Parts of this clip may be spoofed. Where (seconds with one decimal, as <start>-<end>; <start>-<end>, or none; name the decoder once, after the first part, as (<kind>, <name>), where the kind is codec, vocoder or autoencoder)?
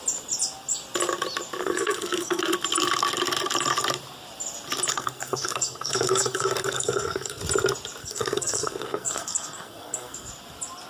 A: 1.6-2.4 (codec, SNAC); 4.9-7.4; 8.0-10.3